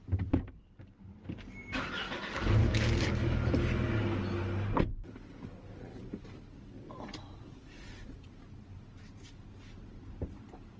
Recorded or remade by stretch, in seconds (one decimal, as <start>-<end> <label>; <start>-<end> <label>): 0.0-2.6 recorded; 2.6-3.5 remade; 3.5-10.8 recorded